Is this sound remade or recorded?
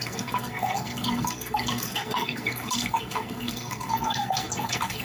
remade